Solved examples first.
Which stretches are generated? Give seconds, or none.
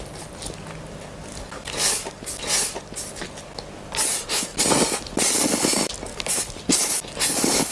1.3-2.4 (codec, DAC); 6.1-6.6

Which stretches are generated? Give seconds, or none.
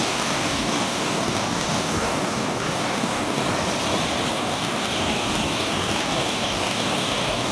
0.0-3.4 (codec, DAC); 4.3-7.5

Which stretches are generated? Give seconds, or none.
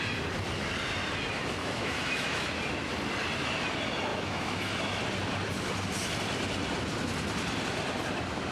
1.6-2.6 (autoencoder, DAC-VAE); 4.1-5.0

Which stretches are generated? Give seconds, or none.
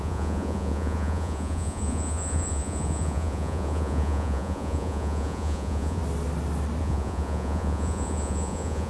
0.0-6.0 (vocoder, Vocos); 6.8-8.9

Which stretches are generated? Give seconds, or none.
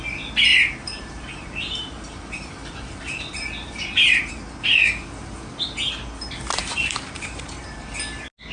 0.5-4.3 (vocoder, BigVGAN v2); 6.6-7.9